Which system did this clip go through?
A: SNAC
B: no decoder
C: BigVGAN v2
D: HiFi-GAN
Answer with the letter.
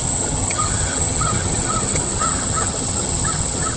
D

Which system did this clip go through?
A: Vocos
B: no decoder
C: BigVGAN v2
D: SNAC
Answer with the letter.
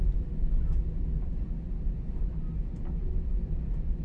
B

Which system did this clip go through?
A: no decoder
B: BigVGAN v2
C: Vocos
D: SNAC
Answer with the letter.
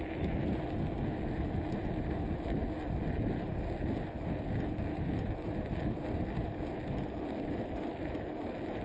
A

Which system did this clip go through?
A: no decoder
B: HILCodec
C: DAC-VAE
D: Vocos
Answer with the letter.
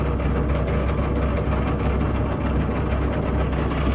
A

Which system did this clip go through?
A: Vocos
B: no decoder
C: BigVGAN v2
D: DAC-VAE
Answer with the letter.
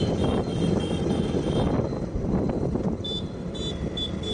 B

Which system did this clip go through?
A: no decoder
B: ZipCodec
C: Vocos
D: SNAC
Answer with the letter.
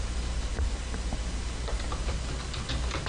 A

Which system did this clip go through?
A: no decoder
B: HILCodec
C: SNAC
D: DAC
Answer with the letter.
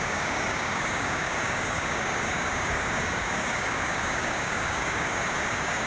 D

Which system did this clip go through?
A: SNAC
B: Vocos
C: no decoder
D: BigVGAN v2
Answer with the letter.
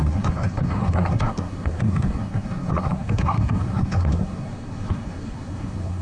A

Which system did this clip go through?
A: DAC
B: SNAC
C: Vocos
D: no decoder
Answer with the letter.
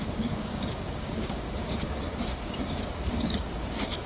A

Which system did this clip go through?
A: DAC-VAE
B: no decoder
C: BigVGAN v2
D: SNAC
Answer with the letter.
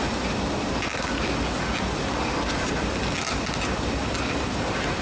B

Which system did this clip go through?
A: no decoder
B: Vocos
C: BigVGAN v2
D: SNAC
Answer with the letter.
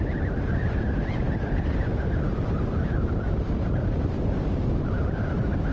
C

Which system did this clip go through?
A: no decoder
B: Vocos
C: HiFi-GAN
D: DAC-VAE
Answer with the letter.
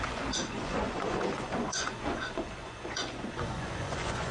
B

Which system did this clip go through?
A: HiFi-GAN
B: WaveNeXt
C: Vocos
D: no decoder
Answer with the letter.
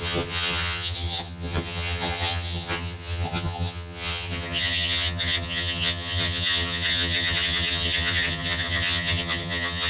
A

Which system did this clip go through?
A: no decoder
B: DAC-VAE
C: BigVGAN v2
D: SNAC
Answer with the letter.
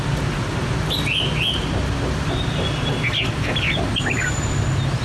A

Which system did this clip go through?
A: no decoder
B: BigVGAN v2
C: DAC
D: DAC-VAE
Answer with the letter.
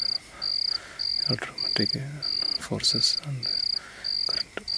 A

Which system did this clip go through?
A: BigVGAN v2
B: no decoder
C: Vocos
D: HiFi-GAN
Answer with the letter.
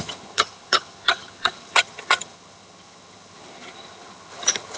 D